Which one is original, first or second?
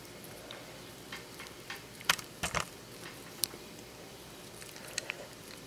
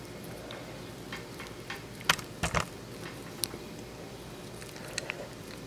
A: second